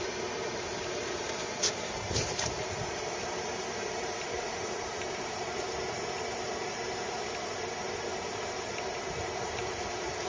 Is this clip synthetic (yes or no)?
yes